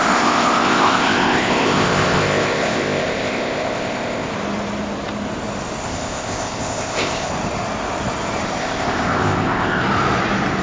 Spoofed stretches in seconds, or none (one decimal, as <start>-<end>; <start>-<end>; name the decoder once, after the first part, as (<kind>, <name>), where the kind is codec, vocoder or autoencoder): 0.0-4.3 (codec, ZipCodec); 5.8-7.3; 8.6-9.8